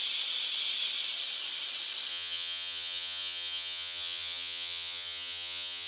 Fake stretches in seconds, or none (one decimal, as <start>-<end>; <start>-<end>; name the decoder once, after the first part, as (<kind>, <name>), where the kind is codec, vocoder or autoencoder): 2.1-5.9 (vocoder, HiFi-GAN)